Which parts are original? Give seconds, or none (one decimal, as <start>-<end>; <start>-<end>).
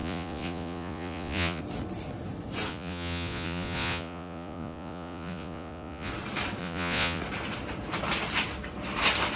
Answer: 1.6-2.7; 6.1-6.6; 7.2-9.4